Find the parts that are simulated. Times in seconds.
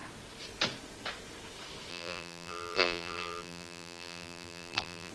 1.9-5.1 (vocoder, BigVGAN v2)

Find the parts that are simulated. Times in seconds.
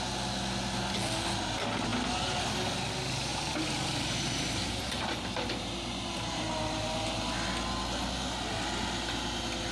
3.3-7.2 (vocoder, BigVGAN v2)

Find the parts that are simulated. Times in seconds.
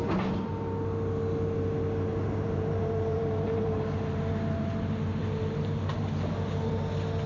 2.1-4.7 (vocoder, BigVGAN v2); 5.2-6.3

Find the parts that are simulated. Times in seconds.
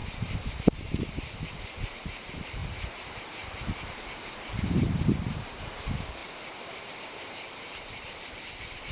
0.0-6.2 (vocoder, BigVGAN v2); 6.8-8.9